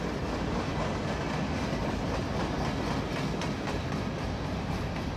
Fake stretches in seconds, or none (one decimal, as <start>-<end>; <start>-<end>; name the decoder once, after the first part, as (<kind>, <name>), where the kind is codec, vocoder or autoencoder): none